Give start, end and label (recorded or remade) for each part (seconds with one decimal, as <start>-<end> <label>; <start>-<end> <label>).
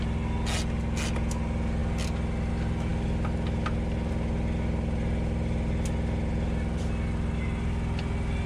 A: 0.0-8.5 recorded